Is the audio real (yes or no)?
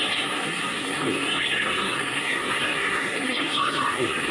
no